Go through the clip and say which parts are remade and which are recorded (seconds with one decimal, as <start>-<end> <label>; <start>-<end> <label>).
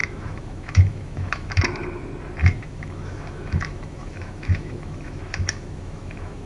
0.0-1.6 remade; 1.6-2.4 recorded; 2.4-6.5 remade